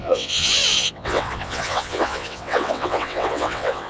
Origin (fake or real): fake